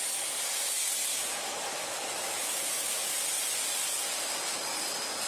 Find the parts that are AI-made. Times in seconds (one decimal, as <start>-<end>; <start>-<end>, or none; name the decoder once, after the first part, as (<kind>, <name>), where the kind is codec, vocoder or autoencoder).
1.2-3.0 (autoencoder, DAC-VAE)